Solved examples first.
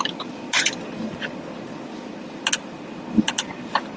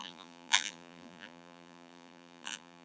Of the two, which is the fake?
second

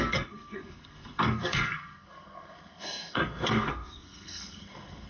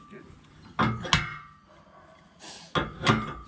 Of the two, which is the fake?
first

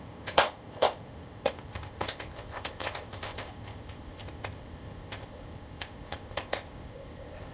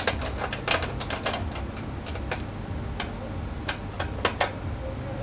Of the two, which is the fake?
first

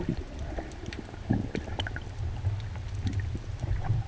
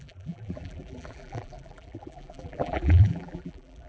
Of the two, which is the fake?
second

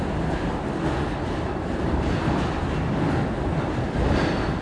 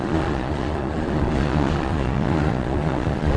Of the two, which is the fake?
second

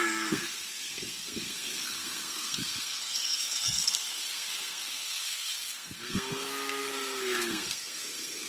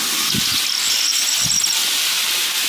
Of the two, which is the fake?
first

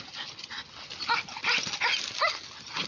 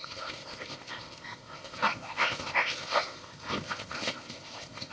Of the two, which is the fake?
second